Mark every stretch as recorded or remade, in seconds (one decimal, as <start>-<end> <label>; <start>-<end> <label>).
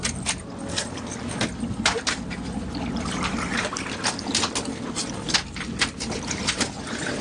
0.0-7.2 recorded